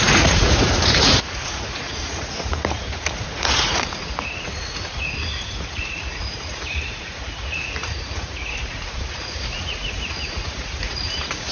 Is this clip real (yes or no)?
no